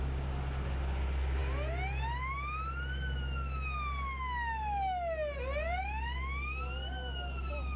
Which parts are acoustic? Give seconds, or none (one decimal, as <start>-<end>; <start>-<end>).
0.0-7.8